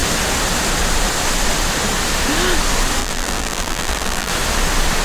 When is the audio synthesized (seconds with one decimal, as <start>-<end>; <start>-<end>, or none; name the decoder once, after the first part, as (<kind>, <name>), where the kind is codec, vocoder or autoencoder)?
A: 3.0-4.3 (vocoder, BigVGAN v2)